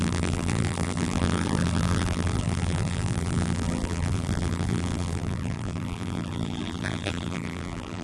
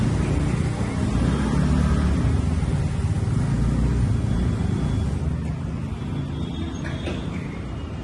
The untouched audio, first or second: second